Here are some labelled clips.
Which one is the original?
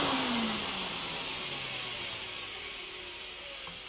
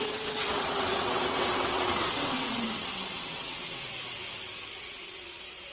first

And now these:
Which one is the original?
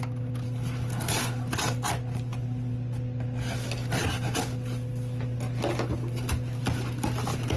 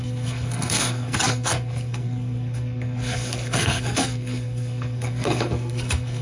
first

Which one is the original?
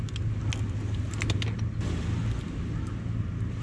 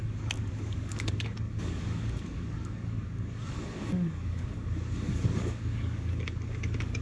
first